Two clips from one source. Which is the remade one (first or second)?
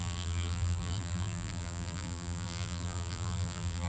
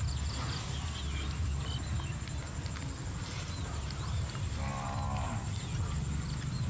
first